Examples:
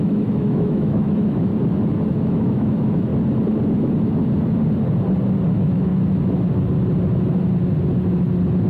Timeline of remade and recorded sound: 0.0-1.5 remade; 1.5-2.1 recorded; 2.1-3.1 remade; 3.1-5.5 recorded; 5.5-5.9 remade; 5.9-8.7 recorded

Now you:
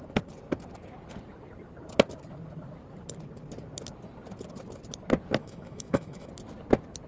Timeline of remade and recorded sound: 0.0-5.4 recorded; 5.4-6.3 remade; 6.3-7.1 recorded

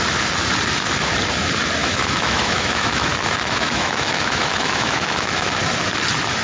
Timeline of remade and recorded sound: 0.0-1.8 recorded; 1.8-5.6 remade; 5.6-6.4 recorded

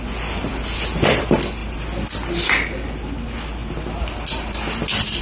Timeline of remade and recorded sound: 0.0-5.2 recorded

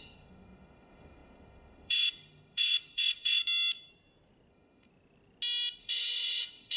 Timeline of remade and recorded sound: 0.0-3.4 remade; 3.4-4.5 recorded; 4.5-4.9 remade; 4.9-5.8 recorded; 5.8-6.8 remade